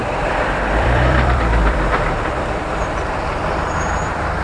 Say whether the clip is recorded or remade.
remade